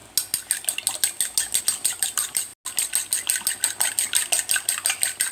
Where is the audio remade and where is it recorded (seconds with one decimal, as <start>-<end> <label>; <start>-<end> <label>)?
0.0-1.6 recorded; 1.6-2.5 remade; 2.5-5.3 recorded